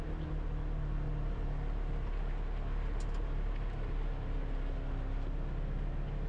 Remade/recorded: recorded